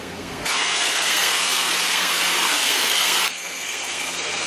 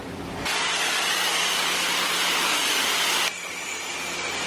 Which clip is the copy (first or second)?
first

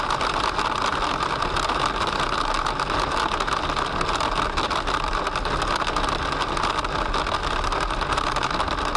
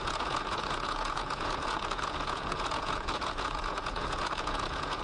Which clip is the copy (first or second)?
second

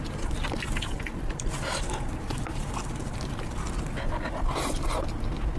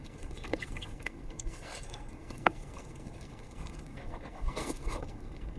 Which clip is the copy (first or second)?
second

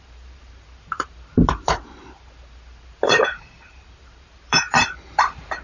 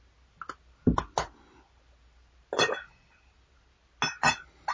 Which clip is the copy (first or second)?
first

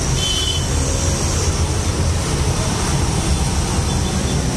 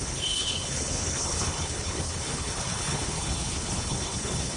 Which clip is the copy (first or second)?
second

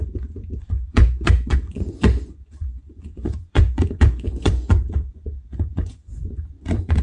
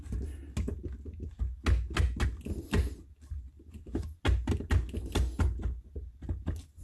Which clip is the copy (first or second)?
first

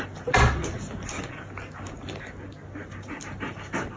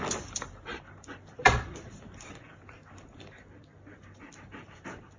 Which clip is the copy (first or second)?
second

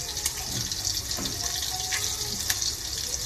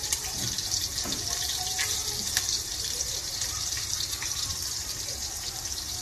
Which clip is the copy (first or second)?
second